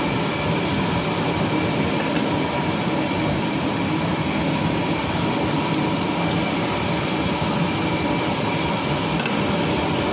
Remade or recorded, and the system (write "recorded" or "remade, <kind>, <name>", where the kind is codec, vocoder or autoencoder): recorded